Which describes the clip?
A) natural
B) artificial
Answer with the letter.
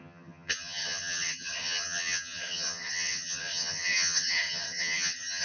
B